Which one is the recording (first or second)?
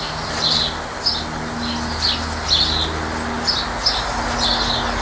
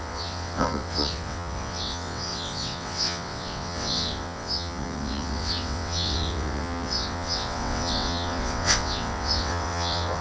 first